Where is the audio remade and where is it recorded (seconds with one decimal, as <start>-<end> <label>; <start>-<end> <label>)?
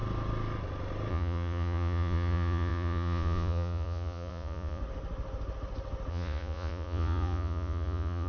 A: 0.0-1.1 recorded; 1.1-4.8 remade; 4.8-6.1 recorded; 6.1-8.3 remade